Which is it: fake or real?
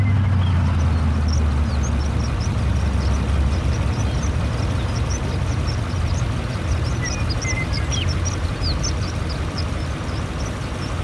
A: real